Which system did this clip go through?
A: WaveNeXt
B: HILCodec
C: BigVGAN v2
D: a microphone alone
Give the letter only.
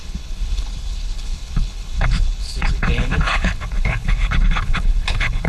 B